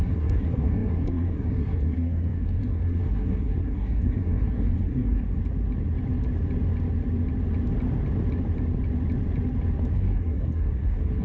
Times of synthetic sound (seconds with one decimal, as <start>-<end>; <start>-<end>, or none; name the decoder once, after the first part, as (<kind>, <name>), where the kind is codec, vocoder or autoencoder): 0.0-5.4 (codec, SNAC); 9.9-11.2